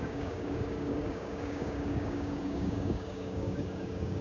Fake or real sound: fake